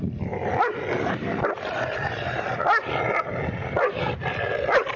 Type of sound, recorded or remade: recorded